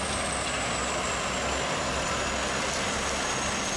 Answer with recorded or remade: recorded